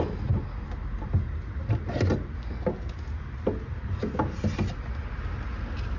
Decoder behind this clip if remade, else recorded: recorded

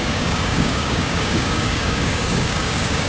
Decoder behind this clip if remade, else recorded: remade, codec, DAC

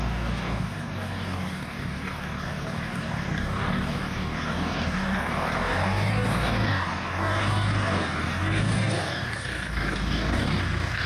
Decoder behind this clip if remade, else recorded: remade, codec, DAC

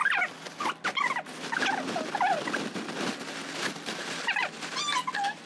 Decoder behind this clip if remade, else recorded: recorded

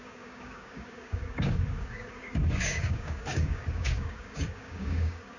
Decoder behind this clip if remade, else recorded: remade, codec, DAC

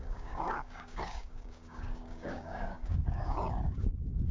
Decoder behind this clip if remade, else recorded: remade, codec, DAC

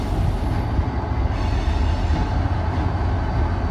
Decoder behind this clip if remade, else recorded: recorded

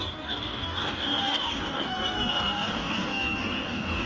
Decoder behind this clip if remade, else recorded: remade, codec, DAC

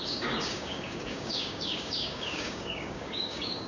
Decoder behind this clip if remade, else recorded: remade, codec, DAC